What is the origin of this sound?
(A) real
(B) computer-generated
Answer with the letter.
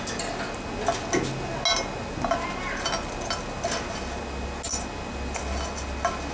A